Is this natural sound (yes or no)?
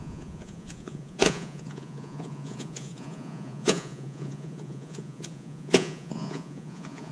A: no